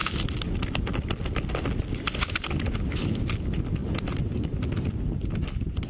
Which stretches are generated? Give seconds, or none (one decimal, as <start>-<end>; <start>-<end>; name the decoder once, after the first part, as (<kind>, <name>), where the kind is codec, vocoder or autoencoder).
3.8-4.6 (vocoder, BigVGAN v2)